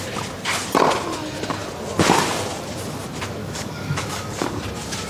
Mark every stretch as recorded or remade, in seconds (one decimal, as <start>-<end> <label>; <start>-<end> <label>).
0.0-3.4 recorded; 3.4-4.6 remade; 4.6-5.1 recorded